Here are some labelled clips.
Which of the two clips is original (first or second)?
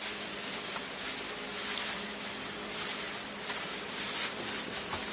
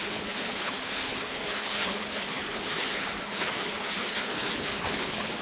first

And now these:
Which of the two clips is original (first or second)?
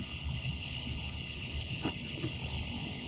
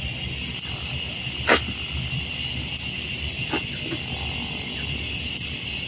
second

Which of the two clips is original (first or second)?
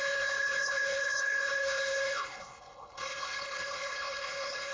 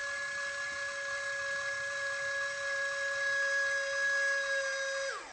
second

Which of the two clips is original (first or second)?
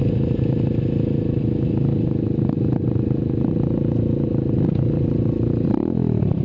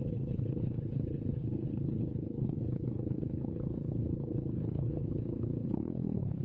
first